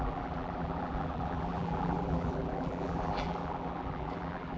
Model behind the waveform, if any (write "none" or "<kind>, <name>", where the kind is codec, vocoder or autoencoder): vocoder, BigVGAN v2